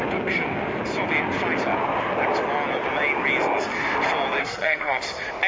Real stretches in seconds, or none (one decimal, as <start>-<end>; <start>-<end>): 0.0-4.4; 5.0-5.5